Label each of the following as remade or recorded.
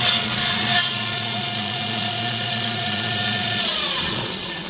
remade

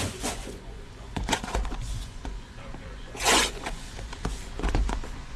remade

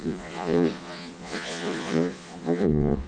remade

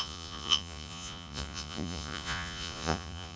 remade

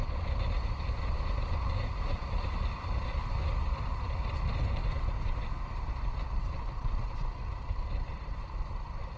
recorded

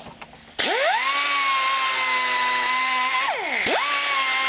recorded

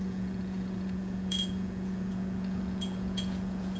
remade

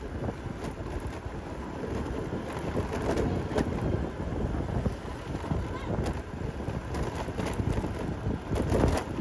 recorded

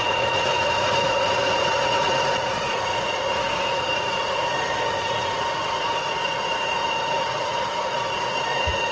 remade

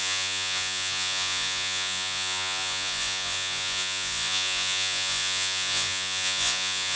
remade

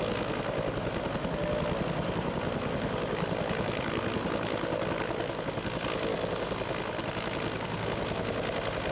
recorded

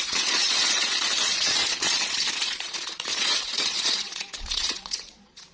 remade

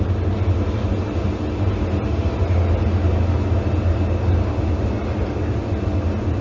recorded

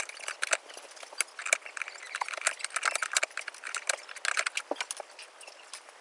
recorded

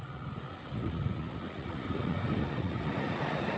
remade